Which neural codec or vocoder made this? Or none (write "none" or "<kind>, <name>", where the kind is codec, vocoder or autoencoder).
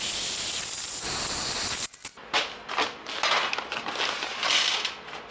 none